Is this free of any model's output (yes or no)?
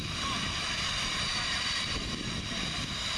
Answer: no